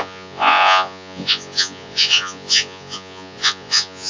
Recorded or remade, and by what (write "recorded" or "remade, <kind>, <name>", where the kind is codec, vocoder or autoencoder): remade, vocoder, Vocos